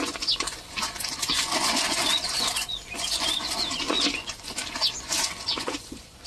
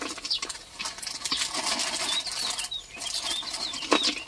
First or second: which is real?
second